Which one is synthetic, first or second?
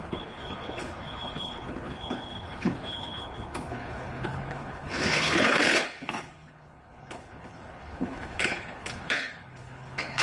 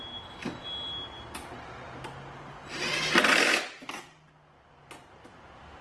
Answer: first